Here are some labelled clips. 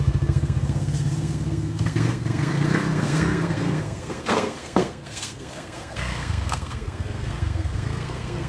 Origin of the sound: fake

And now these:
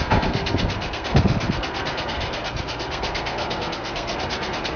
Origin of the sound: fake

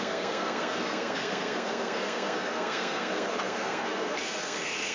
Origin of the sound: fake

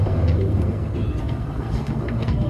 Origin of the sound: fake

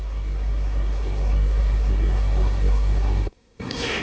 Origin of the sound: fake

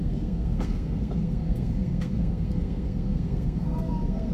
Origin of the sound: fake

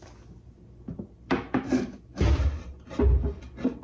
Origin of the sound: real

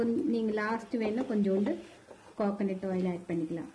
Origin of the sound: real